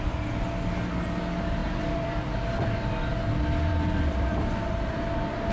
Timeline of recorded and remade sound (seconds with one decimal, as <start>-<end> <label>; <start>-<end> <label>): 0.0-1.6 recorded; 1.6-2.7 remade; 2.7-3.7 recorded; 3.7-5.0 remade; 5.0-5.5 recorded